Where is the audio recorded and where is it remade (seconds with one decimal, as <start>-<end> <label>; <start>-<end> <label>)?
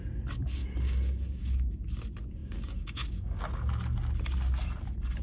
0.0-0.6 recorded; 0.6-1.7 remade; 1.7-2.4 recorded; 2.4-3.4 remade; 3.4-5.2 recorded